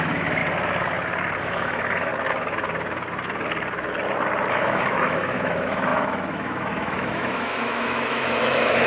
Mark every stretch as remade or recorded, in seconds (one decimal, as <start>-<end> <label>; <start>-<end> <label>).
0.0-0.4 remade; 0.4-1.4 recorded; 1.4-2.1 remade; 2.1-4.5 recorded; 4.5-8.9 remade